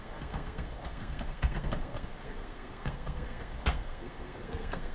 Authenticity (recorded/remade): remade